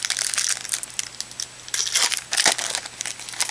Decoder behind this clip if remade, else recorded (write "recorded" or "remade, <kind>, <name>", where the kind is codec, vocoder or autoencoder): recorded